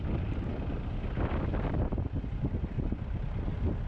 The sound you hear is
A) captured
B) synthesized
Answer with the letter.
A